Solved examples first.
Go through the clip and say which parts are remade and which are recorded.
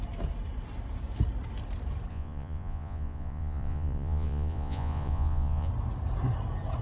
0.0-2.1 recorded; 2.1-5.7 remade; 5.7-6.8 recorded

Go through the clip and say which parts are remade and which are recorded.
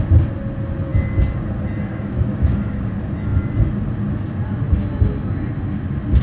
0.0-1.9 recorded; 1.9-2.9 remade; 2.9-6.2 recorded